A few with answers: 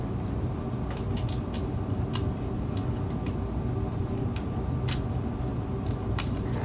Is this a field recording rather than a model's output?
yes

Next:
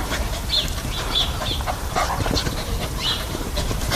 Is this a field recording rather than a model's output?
no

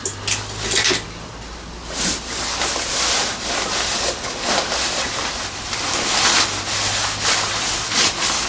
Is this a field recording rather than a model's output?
yes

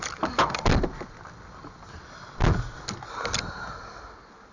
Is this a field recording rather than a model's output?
yes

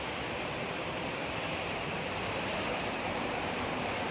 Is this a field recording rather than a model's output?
no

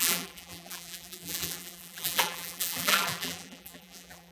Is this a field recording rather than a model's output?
no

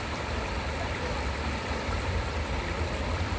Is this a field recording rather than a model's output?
no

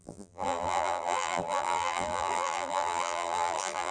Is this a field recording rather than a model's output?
no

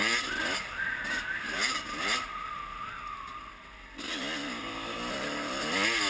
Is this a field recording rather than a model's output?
yes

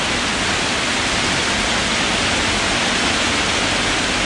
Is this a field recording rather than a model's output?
yes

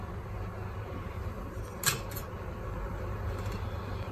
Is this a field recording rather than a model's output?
yes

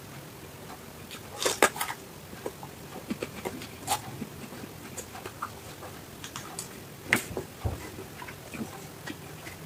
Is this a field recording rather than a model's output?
no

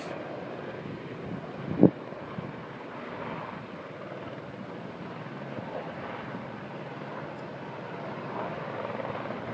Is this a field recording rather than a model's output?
yes